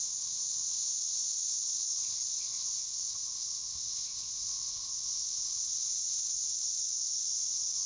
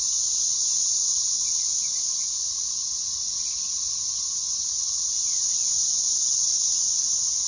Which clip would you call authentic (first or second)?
second